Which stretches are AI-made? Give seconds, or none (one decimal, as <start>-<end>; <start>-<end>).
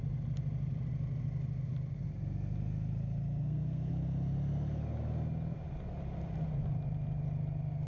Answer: 3.4-3.9